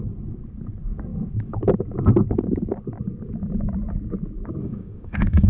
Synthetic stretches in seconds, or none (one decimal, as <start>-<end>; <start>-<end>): 4.6-5.5